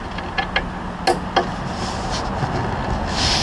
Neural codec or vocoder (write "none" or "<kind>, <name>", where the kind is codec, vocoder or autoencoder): none